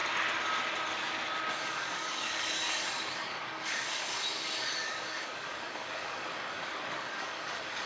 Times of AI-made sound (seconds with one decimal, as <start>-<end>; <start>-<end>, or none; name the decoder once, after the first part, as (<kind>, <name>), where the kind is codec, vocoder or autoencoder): 1.6-7.9 (codec, DAC)